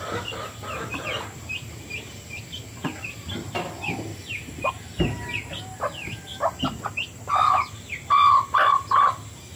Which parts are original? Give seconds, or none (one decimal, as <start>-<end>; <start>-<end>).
0.0-4.1; 4.7-9.6

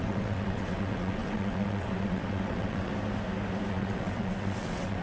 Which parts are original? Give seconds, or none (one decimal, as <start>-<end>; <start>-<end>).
2.9-3.7

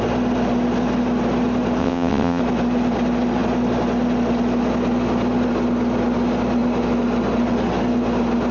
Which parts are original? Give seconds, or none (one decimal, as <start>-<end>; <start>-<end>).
0.0-1.8; 2.4-8.5

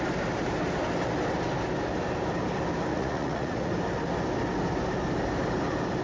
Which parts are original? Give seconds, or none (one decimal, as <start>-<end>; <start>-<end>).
0.0-2.9; 3.7-6.0

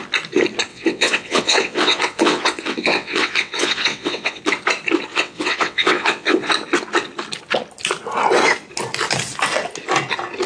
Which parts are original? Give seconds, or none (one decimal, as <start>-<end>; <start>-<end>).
0.0-0.7; 4.4-5.1; 6.5-10.5